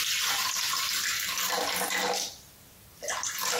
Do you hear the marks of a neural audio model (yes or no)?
no